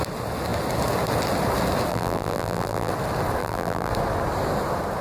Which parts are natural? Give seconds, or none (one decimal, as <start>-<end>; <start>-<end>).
0.0-1.9; 2.9-3.4; 3.9-5.0